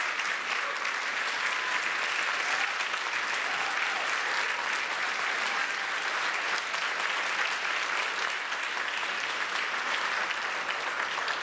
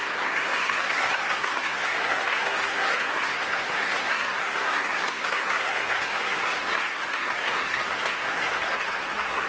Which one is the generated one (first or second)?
second